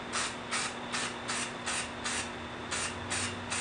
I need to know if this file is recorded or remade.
recorded